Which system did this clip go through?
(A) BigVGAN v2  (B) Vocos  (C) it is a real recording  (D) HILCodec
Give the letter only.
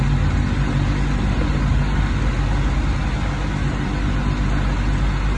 C